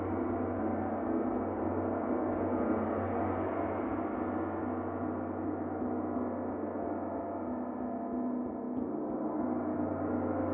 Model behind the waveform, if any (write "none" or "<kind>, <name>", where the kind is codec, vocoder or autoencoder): none